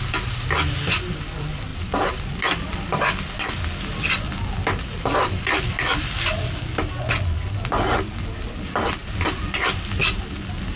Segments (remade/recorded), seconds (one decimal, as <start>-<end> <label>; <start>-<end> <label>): 0.0-1.7 recorded; 1.7-3.0 remade; 3.0-4.9 recorded; 4.9-5.7 remade; 5.7-10.8 recorded